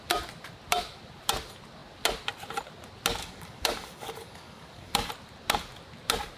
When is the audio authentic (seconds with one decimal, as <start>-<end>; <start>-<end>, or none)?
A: 0.0-3.2; 5.1-6.4